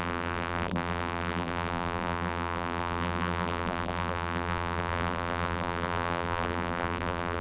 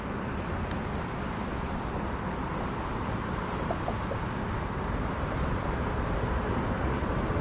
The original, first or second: second